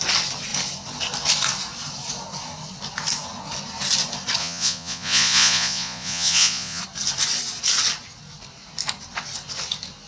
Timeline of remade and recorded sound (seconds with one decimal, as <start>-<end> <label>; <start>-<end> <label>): 0.0-4.4 recorded; 4.4-6.8 remade; 6.8-10.1 recorded